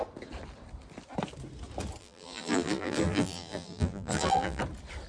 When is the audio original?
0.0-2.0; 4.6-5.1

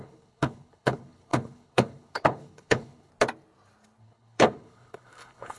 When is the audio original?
3.1-4.0

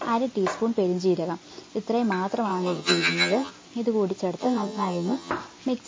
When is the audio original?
0.0-2.5; 3.5-4.4; 5.3-5.9